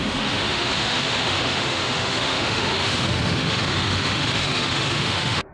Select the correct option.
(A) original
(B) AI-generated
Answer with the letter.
B